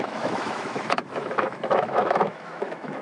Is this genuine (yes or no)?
no